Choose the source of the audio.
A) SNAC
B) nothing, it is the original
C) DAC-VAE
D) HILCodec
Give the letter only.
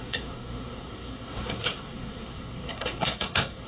A